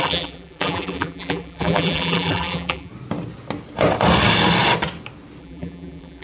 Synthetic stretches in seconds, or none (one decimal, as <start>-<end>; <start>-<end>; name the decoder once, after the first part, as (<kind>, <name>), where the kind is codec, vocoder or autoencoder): 0.0-2.9 (vocoder, BigVGAN v2); 5.4-6.2